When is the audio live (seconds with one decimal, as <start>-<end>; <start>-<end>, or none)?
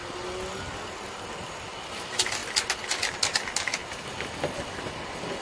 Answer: 0.0-5.4